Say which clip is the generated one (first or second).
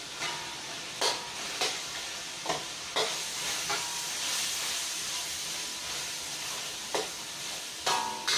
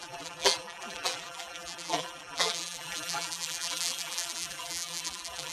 second